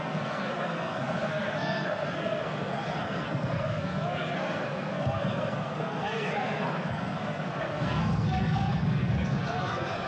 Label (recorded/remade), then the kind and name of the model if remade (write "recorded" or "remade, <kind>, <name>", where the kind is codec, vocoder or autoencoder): remade, codec, SNAC